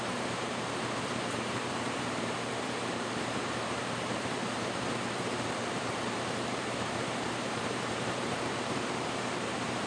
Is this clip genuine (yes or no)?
no